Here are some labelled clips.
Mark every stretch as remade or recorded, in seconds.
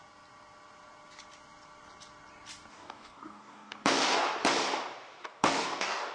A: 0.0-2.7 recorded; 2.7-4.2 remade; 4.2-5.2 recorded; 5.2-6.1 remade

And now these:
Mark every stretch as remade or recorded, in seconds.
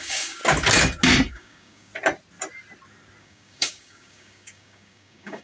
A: 0.0-0.4 remade; 0.4-1.3 recorded; 1.3-1.9 remade; 1.9-3.2 recorded; 3.2-5.4 remade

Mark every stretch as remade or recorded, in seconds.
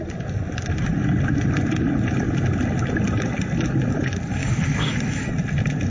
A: 0.0-4.4 recorded; 4.4-5.0 remade; 5.0-5.9 recorded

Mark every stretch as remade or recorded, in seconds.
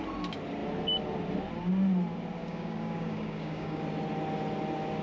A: 0.0-2.4 recorded; 2.4-3.8 remade; 3.8-5.0 recorded